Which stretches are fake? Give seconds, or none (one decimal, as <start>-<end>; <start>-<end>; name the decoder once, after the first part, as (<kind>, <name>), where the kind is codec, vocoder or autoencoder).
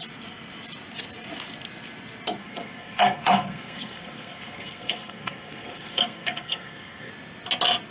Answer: 2.4-7.1 (codec, SNAC)